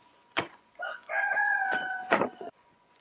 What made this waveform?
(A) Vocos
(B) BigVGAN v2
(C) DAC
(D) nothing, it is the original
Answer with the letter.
A